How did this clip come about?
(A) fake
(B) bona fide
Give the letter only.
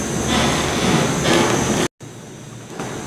B